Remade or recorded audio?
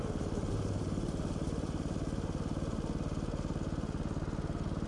recorded